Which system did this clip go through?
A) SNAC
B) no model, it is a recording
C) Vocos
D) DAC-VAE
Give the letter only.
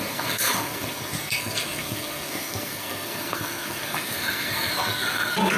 A